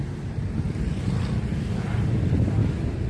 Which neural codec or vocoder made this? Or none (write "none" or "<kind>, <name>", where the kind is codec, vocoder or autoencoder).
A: none